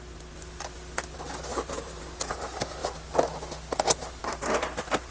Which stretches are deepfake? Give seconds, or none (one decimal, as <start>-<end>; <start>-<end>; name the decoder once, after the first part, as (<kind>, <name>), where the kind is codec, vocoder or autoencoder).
none